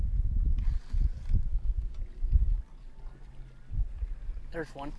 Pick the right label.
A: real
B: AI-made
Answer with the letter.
A